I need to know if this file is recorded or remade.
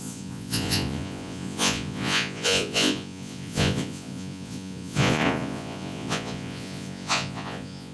remade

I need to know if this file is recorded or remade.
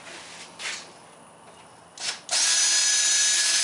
recorded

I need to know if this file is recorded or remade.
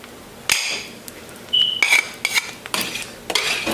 recorded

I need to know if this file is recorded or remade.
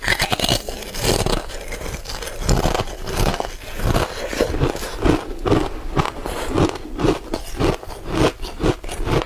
recorded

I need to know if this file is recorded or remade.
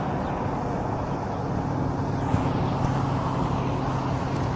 recorded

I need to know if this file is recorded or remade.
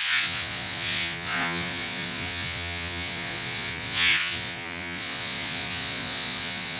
remade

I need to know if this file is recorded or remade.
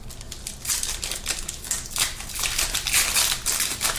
recorded